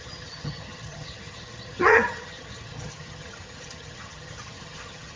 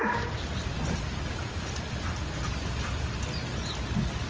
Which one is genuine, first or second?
second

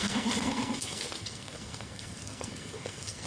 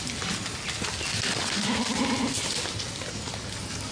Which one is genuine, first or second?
second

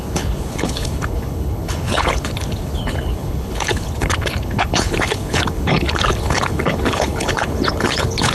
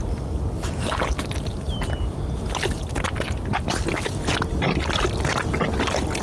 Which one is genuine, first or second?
second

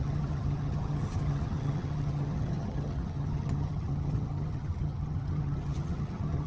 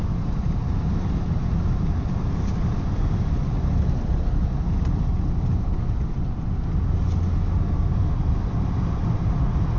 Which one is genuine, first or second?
second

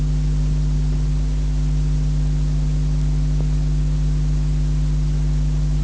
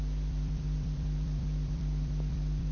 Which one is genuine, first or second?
first